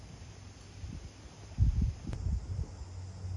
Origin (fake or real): real